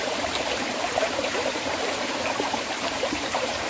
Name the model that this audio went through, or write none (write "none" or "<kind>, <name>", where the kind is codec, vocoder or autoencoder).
vocoder, BigVGAN v2